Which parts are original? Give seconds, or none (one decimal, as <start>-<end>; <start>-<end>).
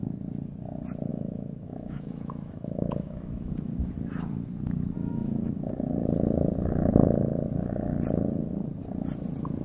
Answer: 0.0-1.1; 3.9-5.0; 5.5-9.6